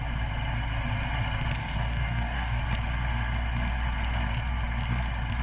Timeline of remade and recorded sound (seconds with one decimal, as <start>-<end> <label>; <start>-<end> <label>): 0.0-1.6 recorded; 1.6-2.6 remade; 2.6-5.4 recorded